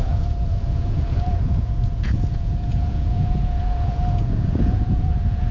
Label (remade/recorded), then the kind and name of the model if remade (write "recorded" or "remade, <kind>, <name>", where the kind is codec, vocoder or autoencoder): remade, vocoder, Vocos